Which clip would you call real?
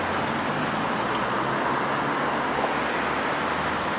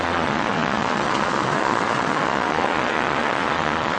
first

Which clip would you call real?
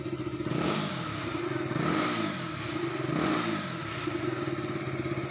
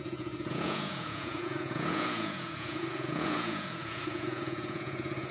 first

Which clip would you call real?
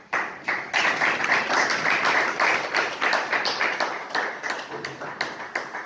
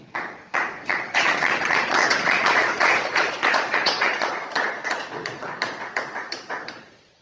first